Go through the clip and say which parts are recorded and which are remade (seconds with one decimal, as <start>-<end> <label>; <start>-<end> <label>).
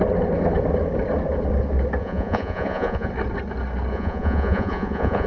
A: 0.0-2.0 recorded; 2.0-3.1 remade; 3.1-3.9 recorded; 3.9-5.3 remade